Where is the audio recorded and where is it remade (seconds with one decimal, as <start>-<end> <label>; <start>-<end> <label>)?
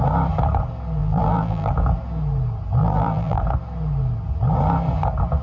0.0-1.0 recorded; 1.0-1.7 remade; 1.7-2.8 recorded; 2.8-3.4 remade; 3.4-5.4 recorded